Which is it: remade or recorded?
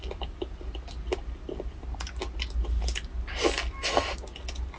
recorded